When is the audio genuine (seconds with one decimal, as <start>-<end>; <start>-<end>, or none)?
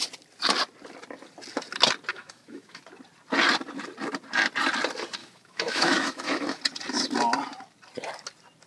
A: 0.0-2.1; 2.8-5.2; 6.6-8.7